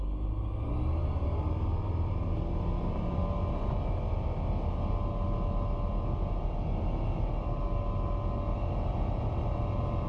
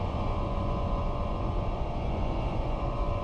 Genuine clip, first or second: first